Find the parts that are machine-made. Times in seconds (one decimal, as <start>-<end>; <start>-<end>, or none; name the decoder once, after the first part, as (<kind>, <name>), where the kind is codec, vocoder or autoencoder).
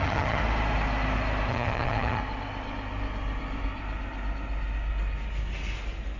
0.0-0.4 (vocoder, HiFi-GAN); 1.5-2.2